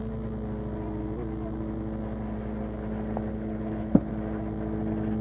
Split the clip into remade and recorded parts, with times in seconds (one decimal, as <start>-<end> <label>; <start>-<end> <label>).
0.0-3.3 recorded; 3.3-4.1 remade; 4.1-5.2 recorded